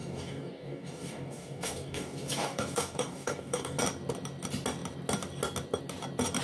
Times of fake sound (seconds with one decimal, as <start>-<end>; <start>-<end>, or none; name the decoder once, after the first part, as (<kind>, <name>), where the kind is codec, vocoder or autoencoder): 0.0-3.8 (codec, DAC)